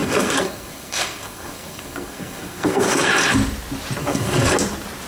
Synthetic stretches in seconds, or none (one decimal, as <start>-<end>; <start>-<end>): 0.0-3.1; 4.0-4.5